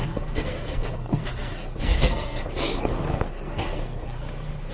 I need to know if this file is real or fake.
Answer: fake